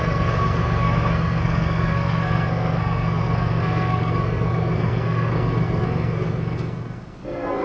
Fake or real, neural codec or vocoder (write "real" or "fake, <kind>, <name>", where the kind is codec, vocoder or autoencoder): fake, codec, SNAC